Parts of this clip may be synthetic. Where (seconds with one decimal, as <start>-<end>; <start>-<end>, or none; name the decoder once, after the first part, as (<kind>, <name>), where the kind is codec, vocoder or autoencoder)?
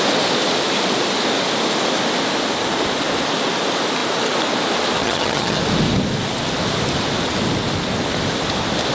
5.0-5.6 (vocoder, HiFi-GAN)